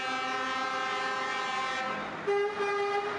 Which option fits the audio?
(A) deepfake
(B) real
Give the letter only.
B